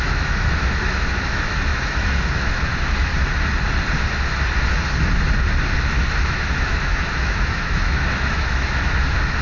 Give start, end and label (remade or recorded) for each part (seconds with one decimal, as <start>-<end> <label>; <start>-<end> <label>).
0.0-3.1 remade; 3.1-5.9 recorded; 5.9-9.4 remade